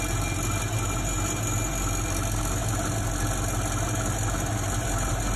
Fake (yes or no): no